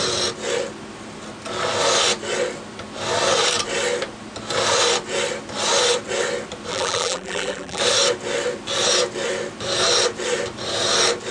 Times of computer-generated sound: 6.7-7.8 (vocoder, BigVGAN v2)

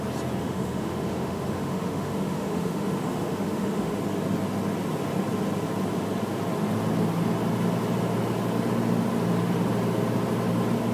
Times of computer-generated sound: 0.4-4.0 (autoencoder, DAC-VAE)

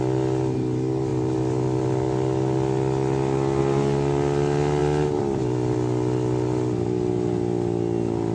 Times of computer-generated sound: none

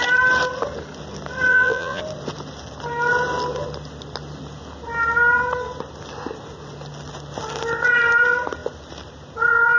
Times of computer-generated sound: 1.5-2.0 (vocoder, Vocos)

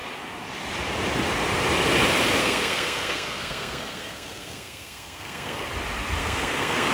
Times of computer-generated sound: 2.4-5.7 (codec, SNAC); 6.2-6.9

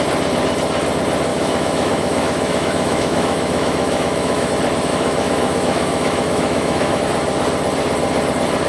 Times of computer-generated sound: 1.3-4.5 (autoencoder, DAC-VAE); 4.9-7.0

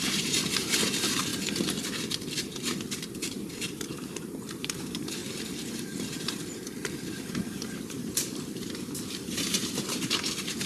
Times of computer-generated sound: 0.0-1.3 (vocoder, BigVGAN v2); 3.2-5.2; 5.7-10.7